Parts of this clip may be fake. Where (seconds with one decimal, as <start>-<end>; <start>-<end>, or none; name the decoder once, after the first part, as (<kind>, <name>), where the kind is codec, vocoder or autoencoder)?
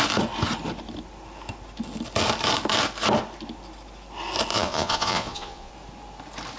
4.5-5.7 (vocoder, Vocos)